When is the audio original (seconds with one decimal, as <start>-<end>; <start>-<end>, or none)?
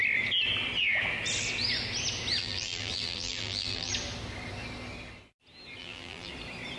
0.0-2.4; 3.9-5.8; 6.3-6.8